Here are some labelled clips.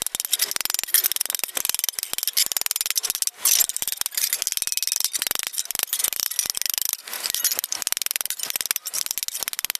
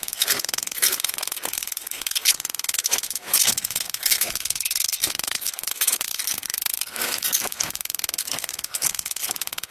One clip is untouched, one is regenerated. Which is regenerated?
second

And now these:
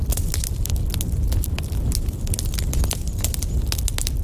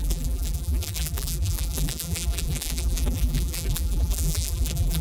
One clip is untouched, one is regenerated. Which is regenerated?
second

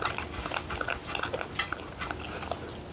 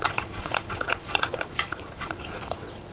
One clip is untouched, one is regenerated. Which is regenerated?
second